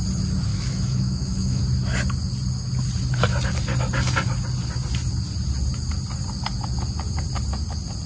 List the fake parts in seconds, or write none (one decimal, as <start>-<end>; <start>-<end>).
0.5-1.6